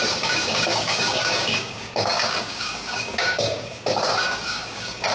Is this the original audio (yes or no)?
no